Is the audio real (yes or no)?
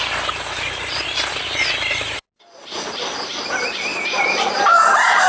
yes